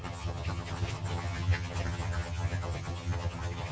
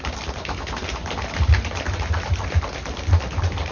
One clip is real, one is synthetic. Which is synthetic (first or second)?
first